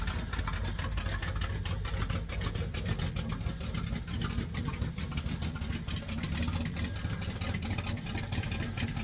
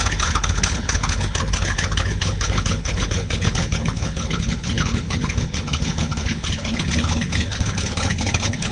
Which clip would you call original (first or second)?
first